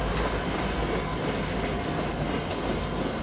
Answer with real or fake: real